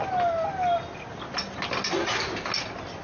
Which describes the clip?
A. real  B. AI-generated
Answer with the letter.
A